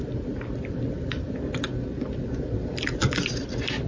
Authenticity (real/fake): real